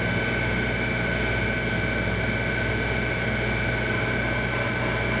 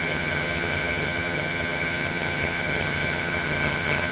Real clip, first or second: first